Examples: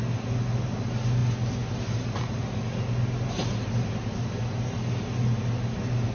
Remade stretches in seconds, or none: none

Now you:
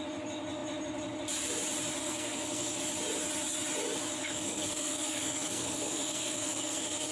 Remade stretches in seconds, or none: 2.0-2.8; 4.2-7.1

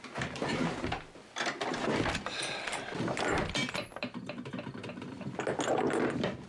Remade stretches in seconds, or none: 3.6-5.4

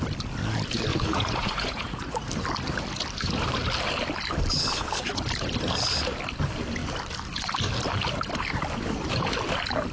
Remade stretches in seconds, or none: 0.9-2.3

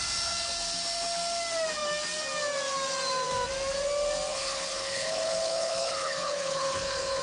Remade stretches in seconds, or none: 4.3-7.2

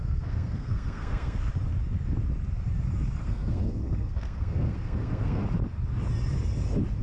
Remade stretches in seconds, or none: 0.0-1.5; 3.2-5.4

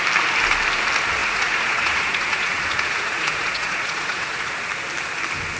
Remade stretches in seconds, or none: 1.2-4.6